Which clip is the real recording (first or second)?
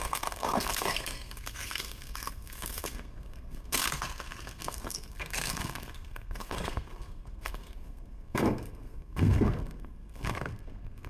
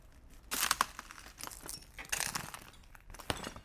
second